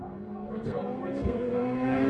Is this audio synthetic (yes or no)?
yes